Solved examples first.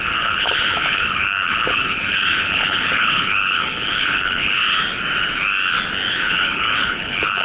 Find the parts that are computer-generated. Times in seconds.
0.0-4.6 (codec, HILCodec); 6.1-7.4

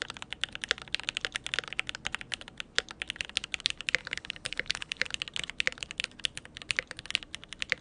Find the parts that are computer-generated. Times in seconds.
4.0-5.1 (codec, HILCodec)

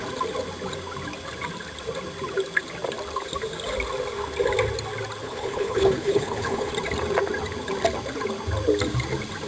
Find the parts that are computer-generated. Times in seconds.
5.2-6.7 (codec, HILCodec)

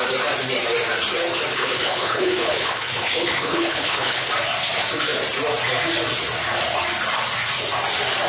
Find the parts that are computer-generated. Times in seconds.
1.5-4.3 (codec, HILCodec)

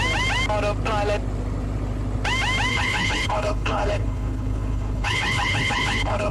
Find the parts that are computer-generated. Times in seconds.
2.7-6.3 (codec, HILCodec)